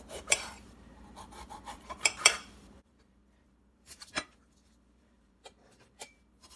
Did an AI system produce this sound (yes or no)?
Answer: yes